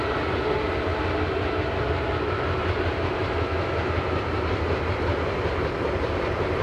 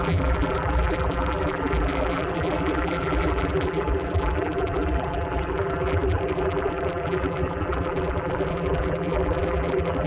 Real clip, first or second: first